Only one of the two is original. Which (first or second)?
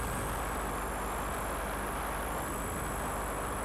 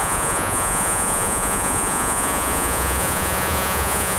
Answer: first